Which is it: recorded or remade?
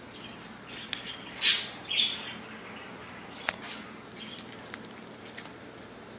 recorded